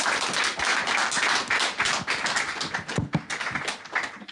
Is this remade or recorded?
recorded